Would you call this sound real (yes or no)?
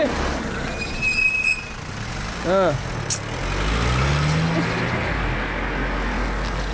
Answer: yes